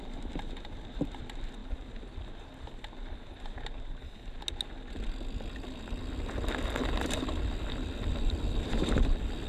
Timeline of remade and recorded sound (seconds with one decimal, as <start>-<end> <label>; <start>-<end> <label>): 0.0-9.5 recorded